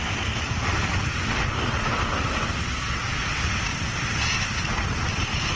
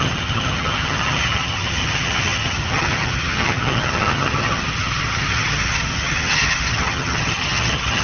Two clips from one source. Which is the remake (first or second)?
second